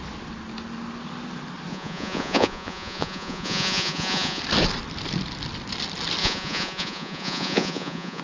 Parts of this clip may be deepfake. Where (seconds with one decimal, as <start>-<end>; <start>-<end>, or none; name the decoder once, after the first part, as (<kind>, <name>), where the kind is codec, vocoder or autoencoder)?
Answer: 1.7-4.4 (vocoder, Vocos); 6.2-8.2